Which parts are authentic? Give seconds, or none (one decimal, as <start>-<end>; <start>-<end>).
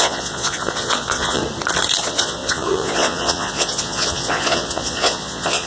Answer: 1.4-2.0